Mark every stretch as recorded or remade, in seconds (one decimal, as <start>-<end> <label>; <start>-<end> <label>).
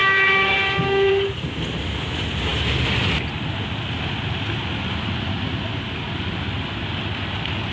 0.0-1.1 remade; 1.1-7.7 recorded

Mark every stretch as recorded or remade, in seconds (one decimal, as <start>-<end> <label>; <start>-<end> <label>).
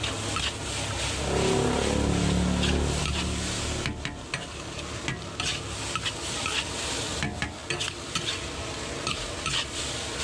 0.0-10.2 recorded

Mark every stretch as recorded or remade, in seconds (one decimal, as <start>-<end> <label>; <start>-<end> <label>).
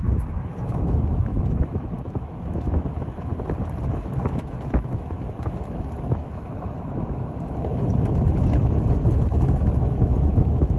0.0-3.3 remade; 3.3-3.9 recorded; 3.9-10.8 remade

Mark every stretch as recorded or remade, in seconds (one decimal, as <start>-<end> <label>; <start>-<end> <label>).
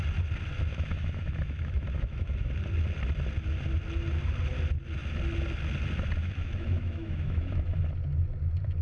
0.0-0.7 recorded; 0.7-2.5 remade; 2.5-6.2 recorded; 6.2-7.8 remade; 7.8-8.8 recorded